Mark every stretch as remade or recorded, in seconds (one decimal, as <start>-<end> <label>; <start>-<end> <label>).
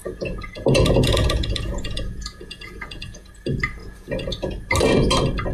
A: 0.0-3.3 remade; 3.3-3.8 recorded; 3.8-4.5 remade; 4.5-5.5 recorded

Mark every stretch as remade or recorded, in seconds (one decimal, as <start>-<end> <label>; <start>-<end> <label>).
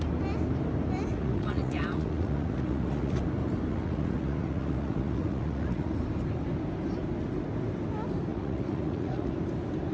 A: 0.0-1.1 recorded; 1.1-3.2 remade; 3.2-3.7 recorded; 3.7-5.9 remade; 5.9-8.3 recorded; 8.3-9.3 remade; 9.3-9.9 recorded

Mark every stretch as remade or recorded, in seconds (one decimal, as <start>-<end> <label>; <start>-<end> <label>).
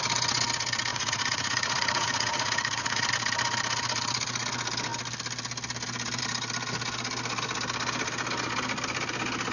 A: 0.0-0.9 recorded; 0.9-3.1 remade; 3.1-9.5 recorded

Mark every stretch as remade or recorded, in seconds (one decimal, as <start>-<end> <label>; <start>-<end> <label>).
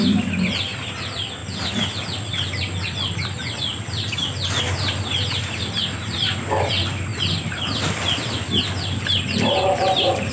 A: 0.0-10.3 recorded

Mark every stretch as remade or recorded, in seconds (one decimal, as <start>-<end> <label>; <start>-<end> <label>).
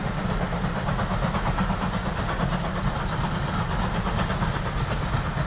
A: 0.0-5.5 recorded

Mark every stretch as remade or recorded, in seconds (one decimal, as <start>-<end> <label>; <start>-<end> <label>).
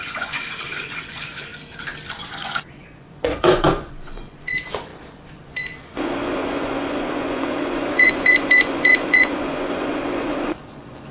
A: 0.0-1.5 remade; 1.5-2.1 recorded; 2.1-11.1 remade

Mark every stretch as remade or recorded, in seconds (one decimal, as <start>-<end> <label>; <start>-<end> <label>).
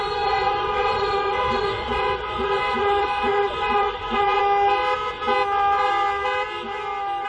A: 0.0-4.4 remade; 4.4-7.3 recorded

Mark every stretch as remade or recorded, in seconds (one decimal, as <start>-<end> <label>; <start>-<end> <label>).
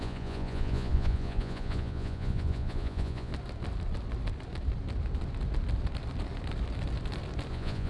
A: 0.0-3.3 remade; 3.3-7.5 recorded; 7.5-7.9 remade